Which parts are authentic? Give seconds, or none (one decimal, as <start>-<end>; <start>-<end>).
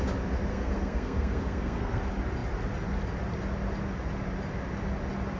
0.0-0.5; 2.0-5.4